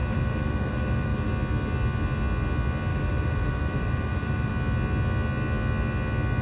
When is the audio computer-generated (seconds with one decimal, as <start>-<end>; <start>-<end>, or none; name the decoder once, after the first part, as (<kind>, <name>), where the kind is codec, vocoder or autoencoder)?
0.0-1.3 (vocoder, BigVGAN v2); 2.9-4.5